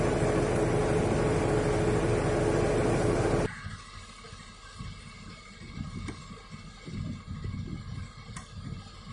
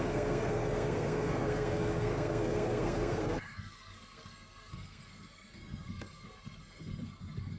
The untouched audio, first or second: first